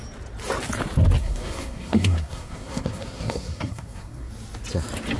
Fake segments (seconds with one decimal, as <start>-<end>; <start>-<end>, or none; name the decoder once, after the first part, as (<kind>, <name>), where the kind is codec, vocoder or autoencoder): 1.2-4.3 (codec, SNAC)